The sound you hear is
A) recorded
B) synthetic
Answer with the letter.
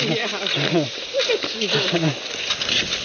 A